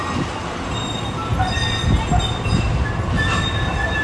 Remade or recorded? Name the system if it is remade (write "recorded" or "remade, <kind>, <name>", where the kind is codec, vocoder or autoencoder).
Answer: recorded